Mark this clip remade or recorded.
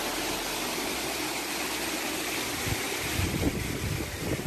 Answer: recorded